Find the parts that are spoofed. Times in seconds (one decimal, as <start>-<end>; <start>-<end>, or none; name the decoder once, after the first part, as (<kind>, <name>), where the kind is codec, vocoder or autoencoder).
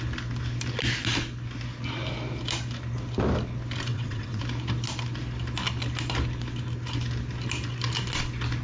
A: 3.9-4.4 (vocoder, WaveNeXt)